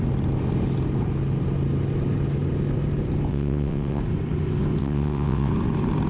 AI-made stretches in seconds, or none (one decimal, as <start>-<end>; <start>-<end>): 3.3-4.0; 4.8-5.5